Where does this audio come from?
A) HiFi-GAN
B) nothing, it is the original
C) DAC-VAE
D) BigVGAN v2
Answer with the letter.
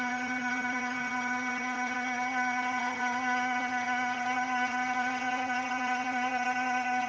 A